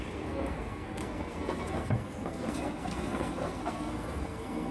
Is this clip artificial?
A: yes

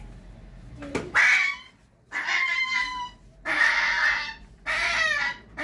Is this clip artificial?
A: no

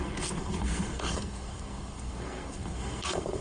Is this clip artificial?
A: yes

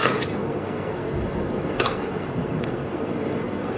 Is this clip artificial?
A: yes